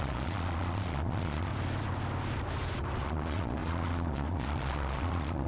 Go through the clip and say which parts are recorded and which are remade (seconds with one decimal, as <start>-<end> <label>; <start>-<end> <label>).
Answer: 0.0-1.5 remade; 1.5-3.0 recorded; 3.0-5.5 remade